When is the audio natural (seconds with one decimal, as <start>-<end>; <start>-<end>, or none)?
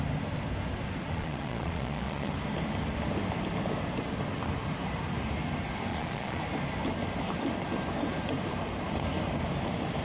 0.0-1.1; 2.3-5.9; 6.4-10.0